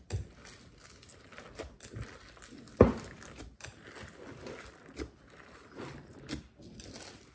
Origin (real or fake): real